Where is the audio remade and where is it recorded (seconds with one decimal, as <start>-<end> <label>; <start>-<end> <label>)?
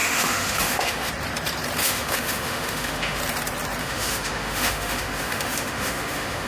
0.0-1.1 remade; 1.1-1.8 recorded; 1.8-3.2 remade; 3.2-3.8 recorded; 3.8-6.5 remade